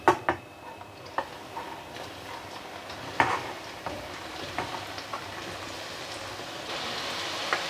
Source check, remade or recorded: remade